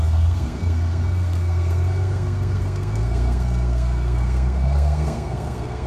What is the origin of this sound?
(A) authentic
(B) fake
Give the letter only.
B